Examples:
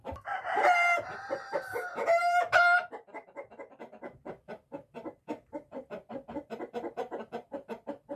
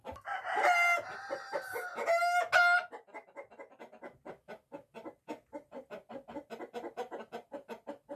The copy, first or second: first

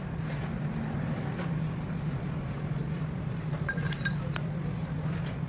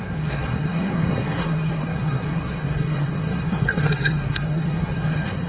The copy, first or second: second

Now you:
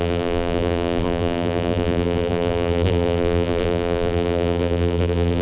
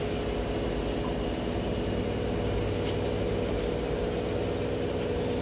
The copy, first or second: first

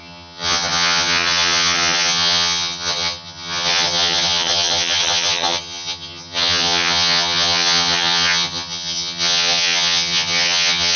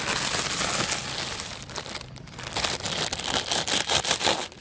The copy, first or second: first